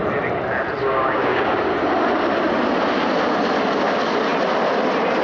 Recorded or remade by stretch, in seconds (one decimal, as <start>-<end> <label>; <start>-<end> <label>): 0.0-0.8 recorded; 0.8-1.5 remade; 1.5-5.2 recorded

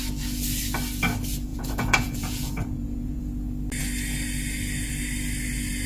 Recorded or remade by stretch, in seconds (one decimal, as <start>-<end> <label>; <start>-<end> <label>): 0.0-1.5 recorded; 1.5-3.2 remade; 3.2-5.9 recorded

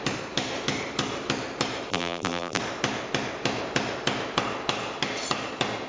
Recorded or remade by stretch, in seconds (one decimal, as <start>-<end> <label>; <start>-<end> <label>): 0.0-1.9 recorded; 1.9-2.6 remade; 2.6-5.9 recorded

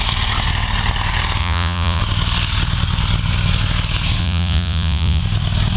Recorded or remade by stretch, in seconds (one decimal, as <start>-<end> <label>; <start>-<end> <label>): 0.0-1.4 recorded; 1.4-2.0 remade; 2.0-4.2 recorded; 4.2-5.2 remade; 5.2-5.8 recorded

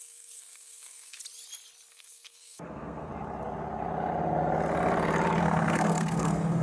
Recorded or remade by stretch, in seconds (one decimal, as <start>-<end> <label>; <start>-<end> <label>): 0.0-1.2 remade; 1.2-1.9 recorded; 1.9-3.1 remade; 3.1-5.4 recorded; 5.4-6.6 remade

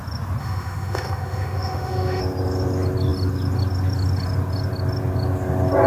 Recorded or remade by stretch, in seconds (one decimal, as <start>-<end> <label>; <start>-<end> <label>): 0.0-0.4 recorded; 0.4-2.2 remade; 2.2-5.9 recorded